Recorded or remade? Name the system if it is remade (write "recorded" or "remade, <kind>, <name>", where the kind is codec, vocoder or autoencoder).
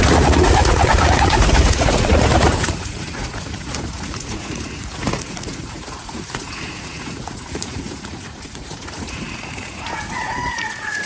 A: remade, vocoder, Vocos